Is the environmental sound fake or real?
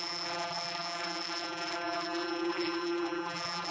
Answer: fake